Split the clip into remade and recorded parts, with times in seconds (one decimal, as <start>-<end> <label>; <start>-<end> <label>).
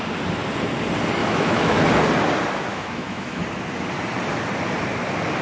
0.0-1.2 recorded; 1.2-1.8 remade; 1.8-2.7 recorded; 2.7-3.4 remade; 3.4-5.4 recorded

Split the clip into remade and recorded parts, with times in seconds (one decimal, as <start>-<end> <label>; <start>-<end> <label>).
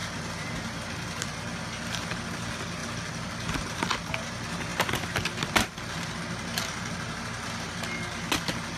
0.0-8.8 recorded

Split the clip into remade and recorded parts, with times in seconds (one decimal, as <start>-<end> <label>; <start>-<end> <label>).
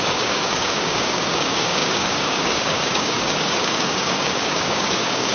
0.0-5.3 remade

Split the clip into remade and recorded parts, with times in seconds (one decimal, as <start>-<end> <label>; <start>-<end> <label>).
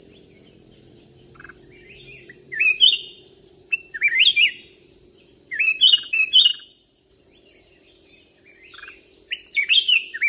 0.0-6.5 remade; 6.5-7.1 recorded; 7.1-10.3 remade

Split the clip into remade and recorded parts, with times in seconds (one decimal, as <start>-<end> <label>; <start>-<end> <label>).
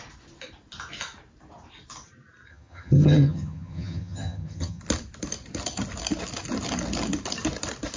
0.0-2.5 recorded; 2.5-4.8 remade; 4.8-8.0 recorded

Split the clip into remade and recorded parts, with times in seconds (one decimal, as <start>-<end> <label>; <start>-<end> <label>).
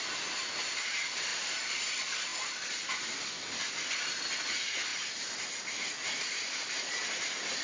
0.0-1.3 recorded; 1.3-1.9 remade; 1.9-4.9 recorded; 4.9-5.5 remade; 5.5-7.6 recorded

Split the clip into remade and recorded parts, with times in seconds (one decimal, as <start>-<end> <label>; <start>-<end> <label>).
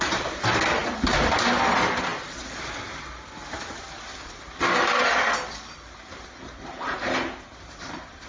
0.0-8.3 recorded